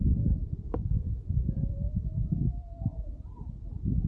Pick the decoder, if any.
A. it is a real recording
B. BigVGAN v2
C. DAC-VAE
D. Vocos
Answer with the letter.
B